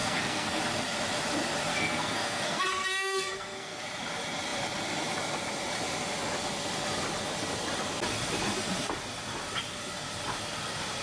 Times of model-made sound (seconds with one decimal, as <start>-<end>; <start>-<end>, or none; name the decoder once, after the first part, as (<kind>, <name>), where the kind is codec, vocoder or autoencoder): 0.0-0.6 (codec, SNAC); 1.7-3.8